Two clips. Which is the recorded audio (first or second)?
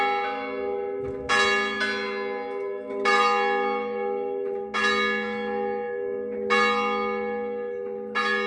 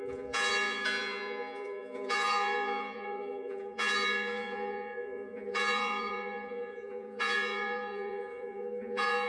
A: first